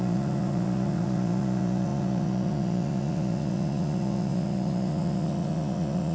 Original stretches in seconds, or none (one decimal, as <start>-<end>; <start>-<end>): none

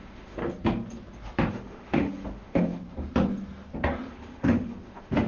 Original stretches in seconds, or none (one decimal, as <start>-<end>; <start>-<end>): 0.4-1.5; 2.8-4.1